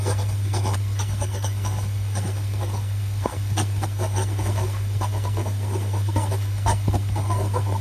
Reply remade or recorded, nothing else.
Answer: remade